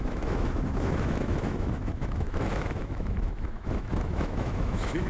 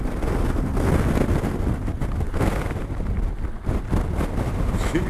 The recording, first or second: second